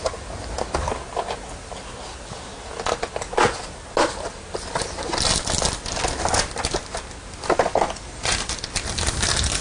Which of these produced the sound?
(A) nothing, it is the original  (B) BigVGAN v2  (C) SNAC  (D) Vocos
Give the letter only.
A